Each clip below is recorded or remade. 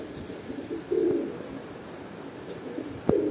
recorded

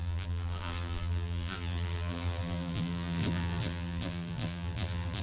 remade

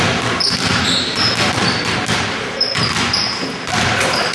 recorded